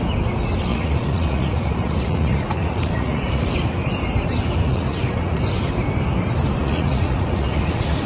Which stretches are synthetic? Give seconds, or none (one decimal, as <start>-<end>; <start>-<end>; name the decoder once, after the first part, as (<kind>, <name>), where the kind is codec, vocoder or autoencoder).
0.7-3.4 (vocoder, Vocos); 4.6-5.4; 6.6-8.1